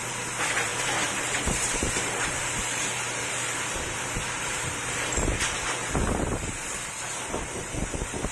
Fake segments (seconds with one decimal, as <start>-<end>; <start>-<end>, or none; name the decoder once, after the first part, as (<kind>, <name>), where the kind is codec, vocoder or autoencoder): 0.0-8.3 (vocoder, BigVGAN v2)